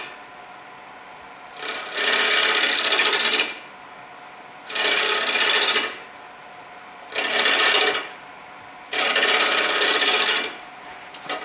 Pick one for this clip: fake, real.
real